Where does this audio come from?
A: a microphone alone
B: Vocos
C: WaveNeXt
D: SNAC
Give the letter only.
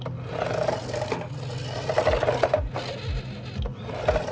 A